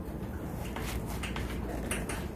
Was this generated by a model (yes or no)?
no